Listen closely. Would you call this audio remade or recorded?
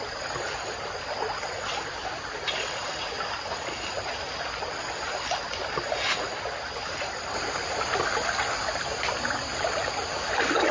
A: recorded